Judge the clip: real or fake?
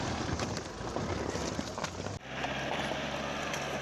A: real